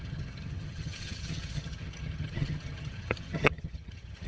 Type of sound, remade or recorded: remade